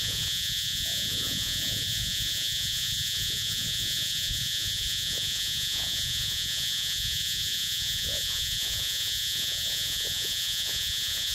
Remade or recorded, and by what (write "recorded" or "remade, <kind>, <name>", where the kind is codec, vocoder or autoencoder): remade, vocoder, Vocos